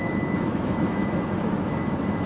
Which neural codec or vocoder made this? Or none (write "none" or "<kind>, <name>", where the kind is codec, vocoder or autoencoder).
autoencoder, DAC-VAE